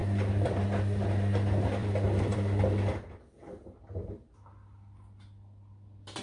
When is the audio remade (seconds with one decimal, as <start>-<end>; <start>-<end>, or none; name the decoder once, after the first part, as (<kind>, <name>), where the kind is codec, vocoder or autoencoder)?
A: 0.0-0.6 (vocoder, BigVGAN v2); 1.8-3.8